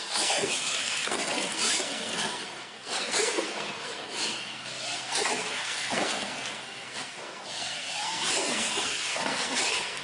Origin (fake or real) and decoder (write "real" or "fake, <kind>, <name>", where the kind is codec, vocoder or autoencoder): fake, codec, SNAC